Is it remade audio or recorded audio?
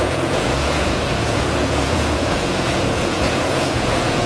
remade